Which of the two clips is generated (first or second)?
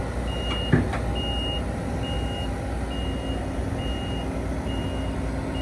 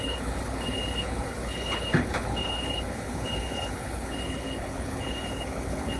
second